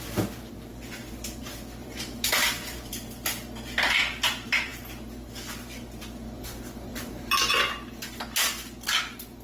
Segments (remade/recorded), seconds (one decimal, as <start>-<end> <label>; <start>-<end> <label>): 0.0-1.8 recorded; 1.8-2.9 remade; 2.9-6.9 recorded; 6.9-7.5 remade; 7.5-9.4 recorded